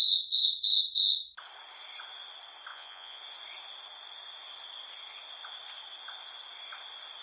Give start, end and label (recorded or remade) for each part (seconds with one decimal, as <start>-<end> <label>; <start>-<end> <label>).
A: 0.0-2.7 recorded; 2.7-3.2 remade; 3.2-7.2 recorded